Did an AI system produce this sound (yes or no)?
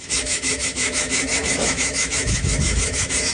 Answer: yes